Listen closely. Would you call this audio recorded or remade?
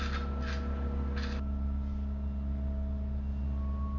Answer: recorded